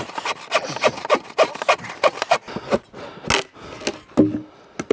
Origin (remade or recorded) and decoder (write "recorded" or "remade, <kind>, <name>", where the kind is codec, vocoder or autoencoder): recorded